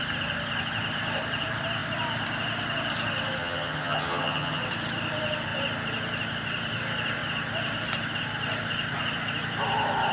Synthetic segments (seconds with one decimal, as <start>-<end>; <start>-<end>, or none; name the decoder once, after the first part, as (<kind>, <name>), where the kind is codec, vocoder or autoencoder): 3.4-4.6 (vocoder, HiFi-GAN)